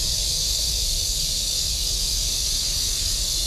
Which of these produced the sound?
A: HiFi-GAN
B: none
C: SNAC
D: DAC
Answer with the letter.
D